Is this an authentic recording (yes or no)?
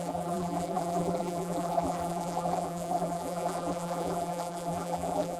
no